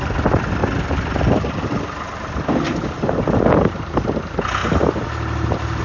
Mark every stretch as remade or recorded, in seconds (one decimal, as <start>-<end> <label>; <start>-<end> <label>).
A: 0.0-0.6 recorded; 0.6-4.1 remade; 4.1-4.6 recorded; 4.6-5.8 remade